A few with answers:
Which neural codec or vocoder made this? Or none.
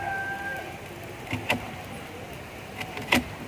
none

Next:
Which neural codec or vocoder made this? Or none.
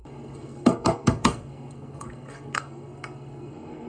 codec, SNAC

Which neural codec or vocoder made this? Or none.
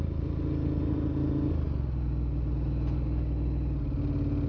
none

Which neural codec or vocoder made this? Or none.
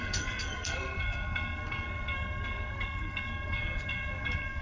codec, SNAC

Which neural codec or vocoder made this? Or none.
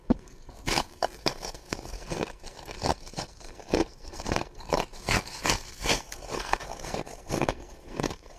codec, SNAC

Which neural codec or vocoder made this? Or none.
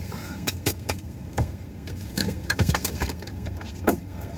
codec, SNAC